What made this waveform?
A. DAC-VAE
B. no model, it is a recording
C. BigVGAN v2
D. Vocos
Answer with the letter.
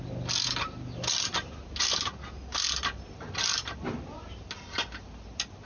B